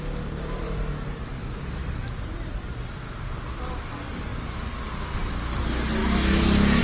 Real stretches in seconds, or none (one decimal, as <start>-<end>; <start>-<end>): 0.0-1.8; 3.0-6.8